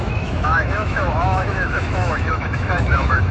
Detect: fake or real fake